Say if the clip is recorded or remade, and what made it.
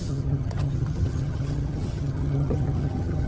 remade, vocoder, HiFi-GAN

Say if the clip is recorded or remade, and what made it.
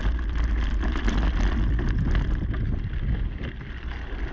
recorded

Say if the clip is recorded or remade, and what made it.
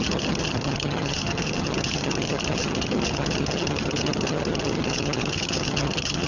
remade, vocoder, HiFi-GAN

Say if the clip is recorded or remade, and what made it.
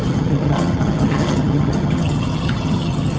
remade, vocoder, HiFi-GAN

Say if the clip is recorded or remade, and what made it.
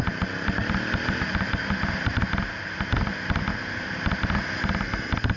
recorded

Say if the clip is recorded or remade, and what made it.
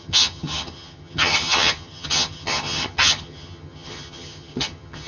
remade, vocoder, HiFi-GAN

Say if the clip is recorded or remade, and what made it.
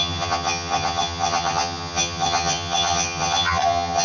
remade, vocoder, HiFi-GAN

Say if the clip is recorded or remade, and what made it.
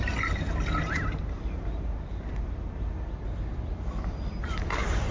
recorded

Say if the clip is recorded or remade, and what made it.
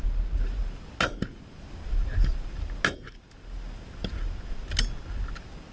recorded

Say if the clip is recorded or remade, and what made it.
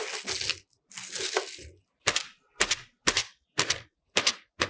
recorded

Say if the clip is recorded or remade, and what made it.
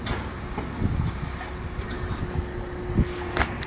recorded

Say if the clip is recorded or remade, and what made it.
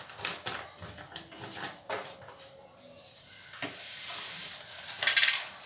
recorded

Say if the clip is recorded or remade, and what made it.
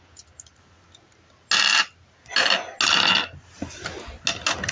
recorded